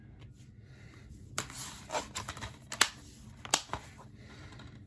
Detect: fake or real real